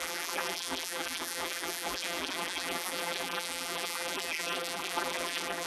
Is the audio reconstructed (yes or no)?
yes